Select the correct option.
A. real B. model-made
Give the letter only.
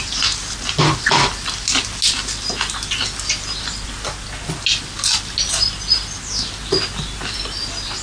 A